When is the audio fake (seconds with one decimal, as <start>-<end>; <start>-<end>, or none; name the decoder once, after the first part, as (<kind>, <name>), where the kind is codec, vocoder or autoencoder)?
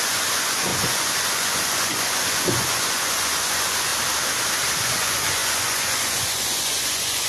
0.0-3.9 (vocoder, Vocos); 4.8-7.3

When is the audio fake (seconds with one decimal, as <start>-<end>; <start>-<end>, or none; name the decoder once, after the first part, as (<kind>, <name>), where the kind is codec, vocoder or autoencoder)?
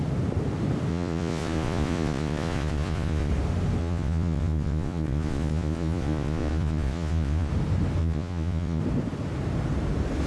0.9-3.3 (vocoder, Vocos); 3.8-7.5; 8.0-8.8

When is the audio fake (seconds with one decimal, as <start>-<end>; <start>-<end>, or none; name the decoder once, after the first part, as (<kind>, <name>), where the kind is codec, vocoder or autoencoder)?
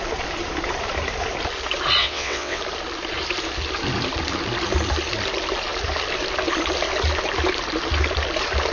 2.0-2.6 (vocoder, WaveNeXt)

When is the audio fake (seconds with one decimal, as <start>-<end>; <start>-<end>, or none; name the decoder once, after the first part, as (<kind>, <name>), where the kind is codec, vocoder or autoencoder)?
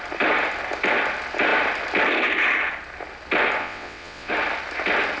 3.6-4.3 (vocoder, WaveNeXt)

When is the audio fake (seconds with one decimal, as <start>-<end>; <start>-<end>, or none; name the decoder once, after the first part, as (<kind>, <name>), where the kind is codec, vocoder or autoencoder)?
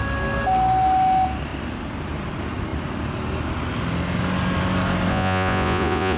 5.1-6.2 (vocoder, Vocos)